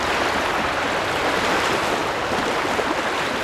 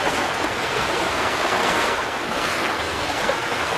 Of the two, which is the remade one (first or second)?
second